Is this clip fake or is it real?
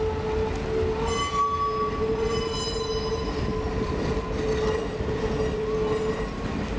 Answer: real